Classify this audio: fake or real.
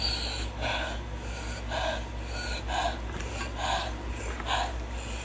real